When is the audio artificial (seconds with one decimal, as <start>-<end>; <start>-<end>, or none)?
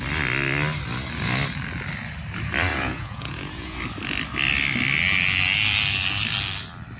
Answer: 2.7-3.8